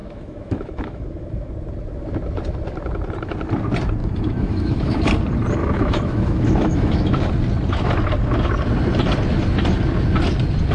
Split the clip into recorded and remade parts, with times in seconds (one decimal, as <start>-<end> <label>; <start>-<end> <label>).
0.0-1.5 remade; 1.5-4.0 recorded; 4.0-5.0 remade; 5.0-5.6 recorded; 5.6-7.3 remade; 7.3-10.7 recorded